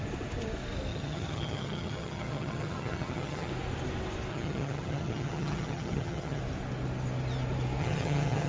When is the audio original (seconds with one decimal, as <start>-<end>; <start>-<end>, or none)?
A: 0.0-0.9; 3.5-4.3; 6.4-7.8